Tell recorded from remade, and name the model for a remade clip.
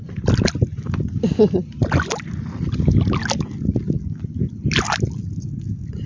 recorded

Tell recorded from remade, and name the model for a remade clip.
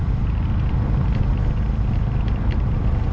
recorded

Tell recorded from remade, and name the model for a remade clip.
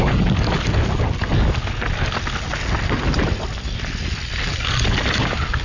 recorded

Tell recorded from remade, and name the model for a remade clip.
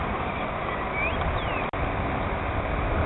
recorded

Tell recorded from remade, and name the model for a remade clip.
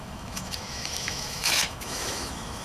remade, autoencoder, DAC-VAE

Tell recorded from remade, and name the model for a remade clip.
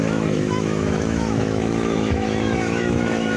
remade, autoencoder, DAC-VAE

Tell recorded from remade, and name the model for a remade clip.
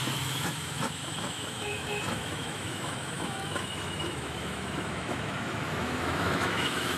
remade, autoencoder, DAC-VAE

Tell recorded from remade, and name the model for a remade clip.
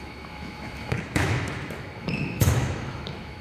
remade, autoencoder, DAC-VAE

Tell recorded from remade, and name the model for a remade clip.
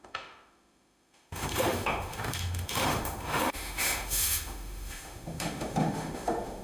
remade, autoencoder, DAC-VAE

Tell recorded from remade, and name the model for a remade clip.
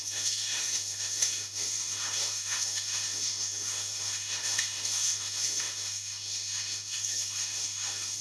remade, autoencoder, DAC-VAE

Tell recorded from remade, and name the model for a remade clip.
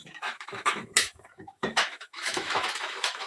remade, autoencoder, DAC-VAE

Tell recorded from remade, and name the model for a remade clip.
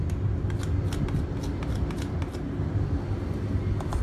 recorded